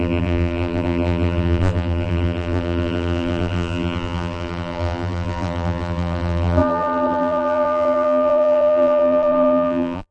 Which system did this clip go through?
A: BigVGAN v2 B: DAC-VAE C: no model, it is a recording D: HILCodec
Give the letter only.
A